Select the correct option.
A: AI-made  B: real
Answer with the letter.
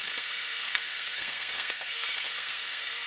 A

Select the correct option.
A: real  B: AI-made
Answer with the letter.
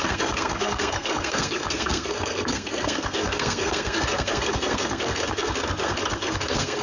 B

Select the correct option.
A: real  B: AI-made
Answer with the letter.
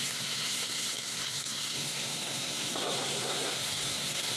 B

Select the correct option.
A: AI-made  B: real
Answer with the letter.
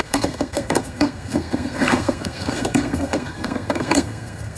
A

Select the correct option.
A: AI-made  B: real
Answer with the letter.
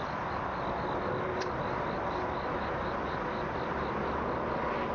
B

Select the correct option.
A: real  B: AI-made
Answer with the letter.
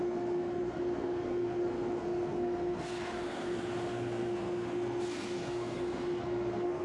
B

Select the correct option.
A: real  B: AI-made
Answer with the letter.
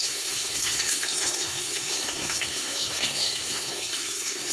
B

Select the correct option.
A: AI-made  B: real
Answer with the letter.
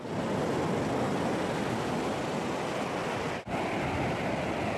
B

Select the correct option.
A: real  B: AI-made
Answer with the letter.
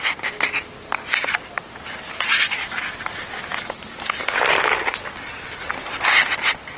A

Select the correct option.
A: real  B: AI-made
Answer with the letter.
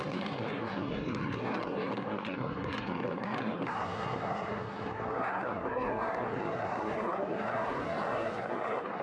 B